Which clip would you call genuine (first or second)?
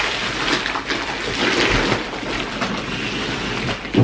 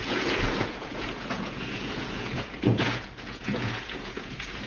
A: first